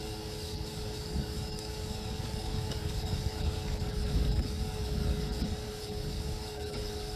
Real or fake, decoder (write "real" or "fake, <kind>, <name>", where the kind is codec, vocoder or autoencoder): fake, codec, DAC